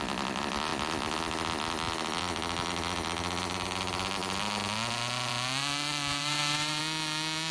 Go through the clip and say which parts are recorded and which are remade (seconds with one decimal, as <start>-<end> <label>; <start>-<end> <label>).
0.0-6.1 recorded; 6.1-6.8 remade; 6.8-7.5 recorded